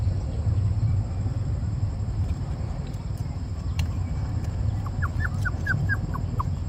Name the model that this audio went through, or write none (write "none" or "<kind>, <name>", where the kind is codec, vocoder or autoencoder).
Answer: vocoder, BigVGAN v2